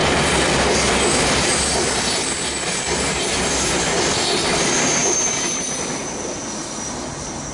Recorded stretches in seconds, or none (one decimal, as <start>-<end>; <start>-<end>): 0.0-7.5